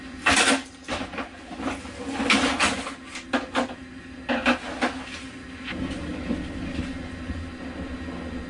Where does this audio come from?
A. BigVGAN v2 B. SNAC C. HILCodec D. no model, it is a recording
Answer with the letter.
D